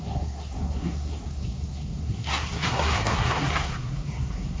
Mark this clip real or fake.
fake